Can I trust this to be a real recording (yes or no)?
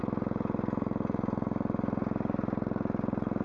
yes